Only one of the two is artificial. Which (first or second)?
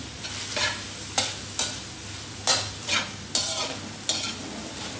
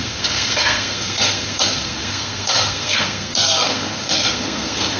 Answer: second